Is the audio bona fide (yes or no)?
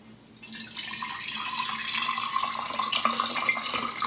yes